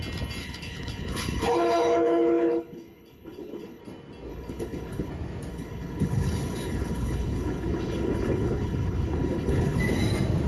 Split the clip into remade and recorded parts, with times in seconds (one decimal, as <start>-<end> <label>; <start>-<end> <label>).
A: 0.0-0.4 recorded; 0.4-3.8 remade; 3.8-4.3 recorded; 4.3-5.1 remade; 5.1-5.5 recorded; 5.5-9.8 remade; 9.8-10.5 recorded